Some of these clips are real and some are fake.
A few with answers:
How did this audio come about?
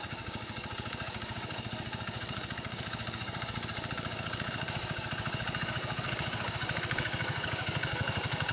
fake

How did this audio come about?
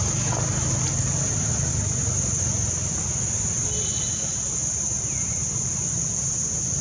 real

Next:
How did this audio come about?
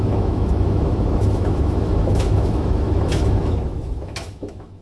fake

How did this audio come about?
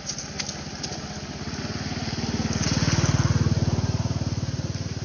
real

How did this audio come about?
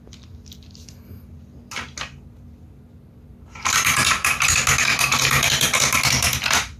real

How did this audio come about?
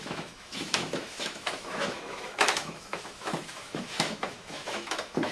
fake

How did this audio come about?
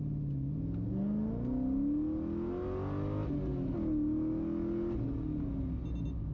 real